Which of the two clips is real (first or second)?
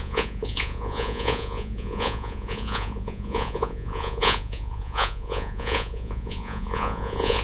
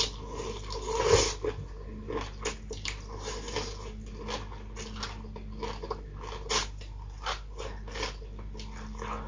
second